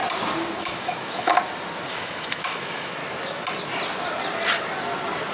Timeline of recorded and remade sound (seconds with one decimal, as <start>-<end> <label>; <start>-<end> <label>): 0.0-0.6 recorded; 0.6-1.3 remade; 1.3-1.9 recorded; 1.9-3.0 remade; 3.0-5.3 recorded